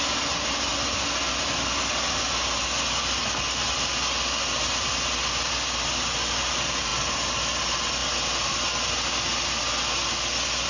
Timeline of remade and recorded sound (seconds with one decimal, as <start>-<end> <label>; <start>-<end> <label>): 0.0-10.7 recorded